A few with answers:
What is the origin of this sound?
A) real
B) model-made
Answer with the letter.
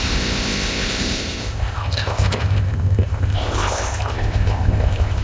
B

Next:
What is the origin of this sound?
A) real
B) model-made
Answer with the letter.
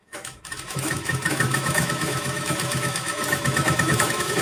B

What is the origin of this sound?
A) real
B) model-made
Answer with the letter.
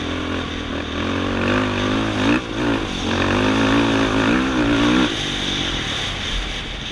A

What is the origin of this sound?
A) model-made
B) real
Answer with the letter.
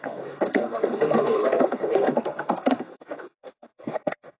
A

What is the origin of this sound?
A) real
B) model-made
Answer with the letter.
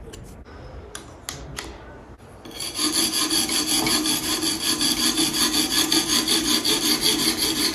A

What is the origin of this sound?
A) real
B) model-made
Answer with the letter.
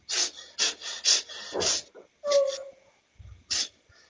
A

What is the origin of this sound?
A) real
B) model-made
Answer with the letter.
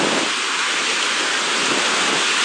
A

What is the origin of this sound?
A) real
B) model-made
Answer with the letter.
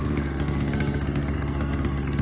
B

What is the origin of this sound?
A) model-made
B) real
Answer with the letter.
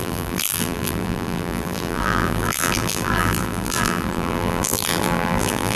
A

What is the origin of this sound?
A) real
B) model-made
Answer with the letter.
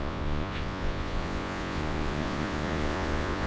B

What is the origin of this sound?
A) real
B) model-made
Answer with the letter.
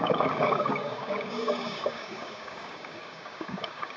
B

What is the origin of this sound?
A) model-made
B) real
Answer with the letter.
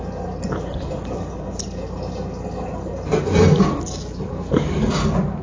B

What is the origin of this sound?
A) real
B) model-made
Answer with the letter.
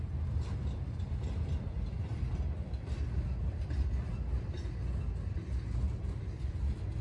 A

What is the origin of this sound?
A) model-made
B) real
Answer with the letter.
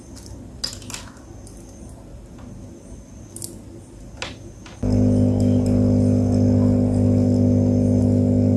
B